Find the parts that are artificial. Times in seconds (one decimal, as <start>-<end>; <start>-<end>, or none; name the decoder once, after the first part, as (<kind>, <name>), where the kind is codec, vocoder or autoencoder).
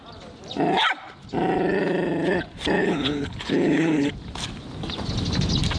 2.8-4.1 (codec, HILCodec)